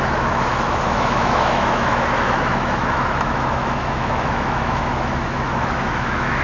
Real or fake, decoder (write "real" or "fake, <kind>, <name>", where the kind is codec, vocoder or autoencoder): fake, autoencoder, DAC-VAE